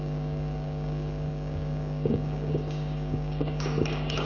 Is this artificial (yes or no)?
yes